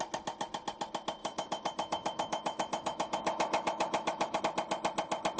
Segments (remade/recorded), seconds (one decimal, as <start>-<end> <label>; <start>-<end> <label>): 0.0-1.2 recorded; 1.2-4.4 remade; 4.4-5.4 recorded